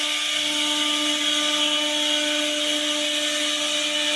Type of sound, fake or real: real